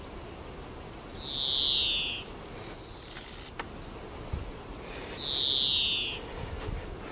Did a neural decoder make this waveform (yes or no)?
no